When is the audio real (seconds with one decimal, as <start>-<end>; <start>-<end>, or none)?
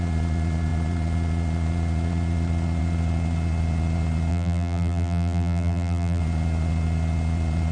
0.0-4.3; 6.2-7.7